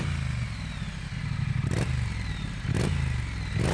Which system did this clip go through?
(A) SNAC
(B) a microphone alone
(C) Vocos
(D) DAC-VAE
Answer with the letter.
B